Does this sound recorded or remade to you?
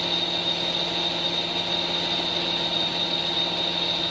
recorded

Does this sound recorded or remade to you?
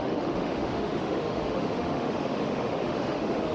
remade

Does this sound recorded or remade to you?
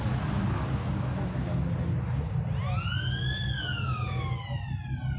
recorded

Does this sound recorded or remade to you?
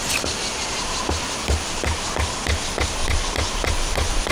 recorded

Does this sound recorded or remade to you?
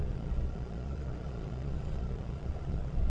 remade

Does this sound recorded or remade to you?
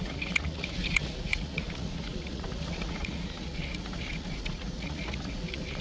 remade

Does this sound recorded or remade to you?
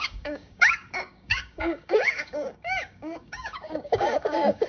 remade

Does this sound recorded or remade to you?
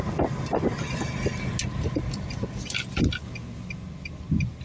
recorded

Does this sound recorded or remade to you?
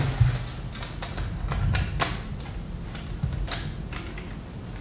recorded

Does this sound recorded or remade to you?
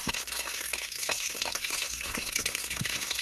remade